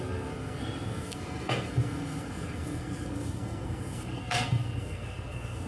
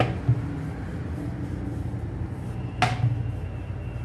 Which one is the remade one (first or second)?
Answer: first